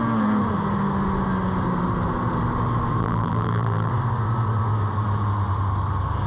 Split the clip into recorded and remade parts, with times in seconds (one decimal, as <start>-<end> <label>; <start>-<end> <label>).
0.0-3.0 recorded; 3.0-3.9 remade; 3.9-6.3 recorded